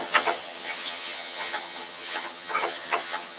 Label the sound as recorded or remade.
remade